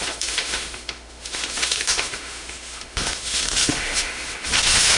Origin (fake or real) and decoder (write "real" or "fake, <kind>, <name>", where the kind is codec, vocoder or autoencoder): fake, autoencoder, DAC-VAE